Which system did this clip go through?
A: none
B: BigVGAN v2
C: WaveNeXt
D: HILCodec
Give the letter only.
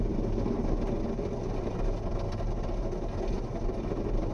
A